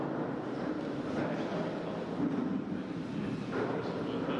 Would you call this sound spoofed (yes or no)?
no